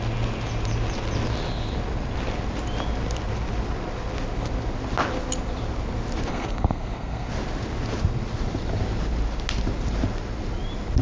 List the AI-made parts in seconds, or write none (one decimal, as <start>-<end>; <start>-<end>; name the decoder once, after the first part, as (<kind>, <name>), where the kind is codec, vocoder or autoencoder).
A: 6.3-7.3 (codec, SNAC)